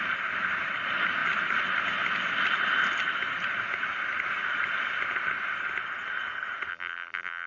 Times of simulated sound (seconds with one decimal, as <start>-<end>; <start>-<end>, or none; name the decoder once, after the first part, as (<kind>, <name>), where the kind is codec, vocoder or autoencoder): 6.7-7.5 (vocoder, BigVGAN v2)